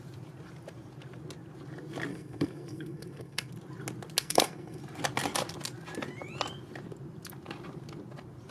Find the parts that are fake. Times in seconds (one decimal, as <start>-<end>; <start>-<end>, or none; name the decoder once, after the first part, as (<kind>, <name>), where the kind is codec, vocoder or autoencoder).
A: 2.1-3.5 (codec, SNAC); 4.2-4.8